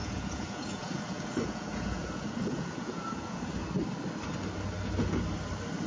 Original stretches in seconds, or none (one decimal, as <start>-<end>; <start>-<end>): 3.5-5.9